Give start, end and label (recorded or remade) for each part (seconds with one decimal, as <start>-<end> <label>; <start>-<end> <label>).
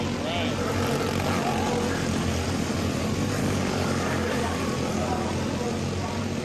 0.0-3.4 recorded; 3.4-4.6 remade; 4.6-6.4 recorded